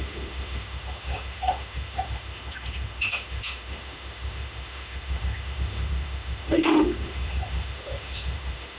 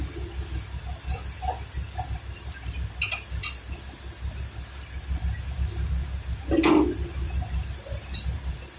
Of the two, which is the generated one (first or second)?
first